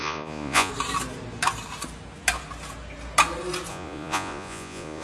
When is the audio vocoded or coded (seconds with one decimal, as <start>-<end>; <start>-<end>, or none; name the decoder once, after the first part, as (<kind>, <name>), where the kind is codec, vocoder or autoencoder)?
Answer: 0.0-0.7 (vocoder, Vocos); 3.7-5.0